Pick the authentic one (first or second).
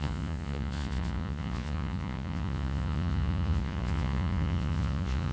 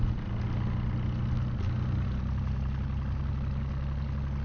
second